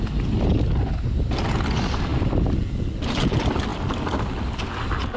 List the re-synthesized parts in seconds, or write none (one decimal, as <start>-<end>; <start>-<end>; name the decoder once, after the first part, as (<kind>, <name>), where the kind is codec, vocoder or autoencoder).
none